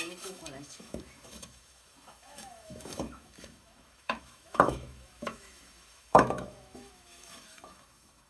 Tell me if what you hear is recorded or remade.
remade